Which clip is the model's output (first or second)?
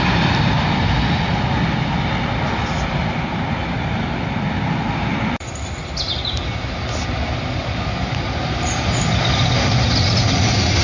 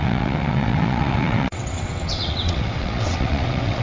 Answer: second